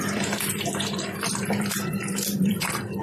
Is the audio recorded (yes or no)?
no